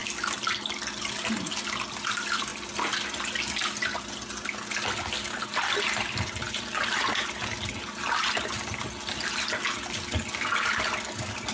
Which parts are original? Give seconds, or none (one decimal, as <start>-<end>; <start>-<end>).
0.0-11.5